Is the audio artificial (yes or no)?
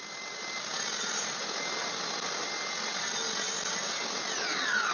no